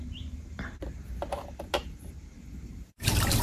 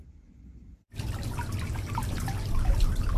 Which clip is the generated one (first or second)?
first